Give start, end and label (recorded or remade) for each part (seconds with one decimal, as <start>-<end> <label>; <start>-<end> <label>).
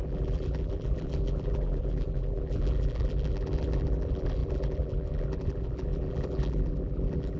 0.0-7.4 remade